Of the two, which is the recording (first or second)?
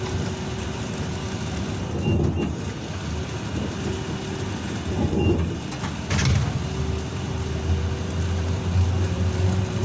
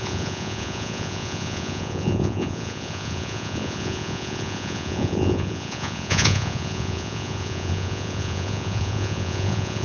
first